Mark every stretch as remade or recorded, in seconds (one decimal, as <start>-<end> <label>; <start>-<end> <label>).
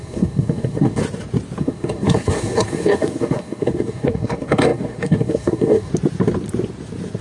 0.0-1.0 remade; 1.0-1.6 recorded; 1.6-5.9 remade; 5.9-7.2 recorded